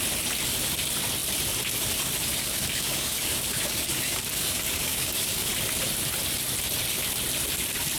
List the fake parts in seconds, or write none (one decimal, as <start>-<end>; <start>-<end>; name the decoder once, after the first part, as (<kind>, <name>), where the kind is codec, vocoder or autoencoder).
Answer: 2.4-5.5 (codec, DAC)